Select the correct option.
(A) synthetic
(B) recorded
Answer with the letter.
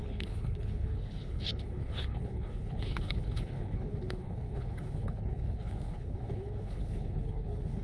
A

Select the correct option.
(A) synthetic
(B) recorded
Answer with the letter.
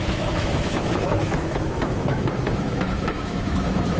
A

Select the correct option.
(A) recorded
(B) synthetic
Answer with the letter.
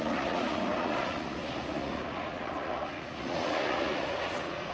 B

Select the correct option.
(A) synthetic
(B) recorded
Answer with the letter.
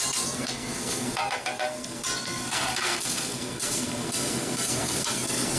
A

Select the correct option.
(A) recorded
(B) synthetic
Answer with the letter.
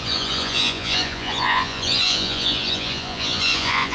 B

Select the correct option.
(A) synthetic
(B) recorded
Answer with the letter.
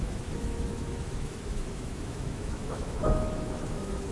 A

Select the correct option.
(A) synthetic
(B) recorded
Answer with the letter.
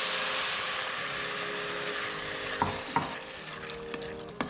B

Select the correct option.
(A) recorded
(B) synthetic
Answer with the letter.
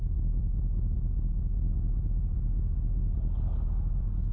A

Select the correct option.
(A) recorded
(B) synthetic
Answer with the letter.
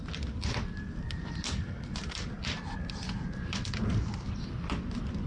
A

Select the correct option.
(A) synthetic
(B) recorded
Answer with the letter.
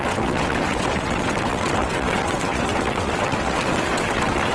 A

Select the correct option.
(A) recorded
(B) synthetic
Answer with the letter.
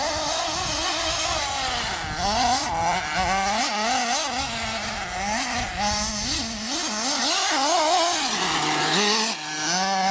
A